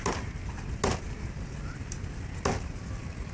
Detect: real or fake real